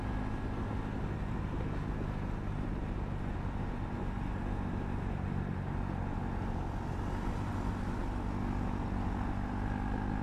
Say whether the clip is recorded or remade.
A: recorded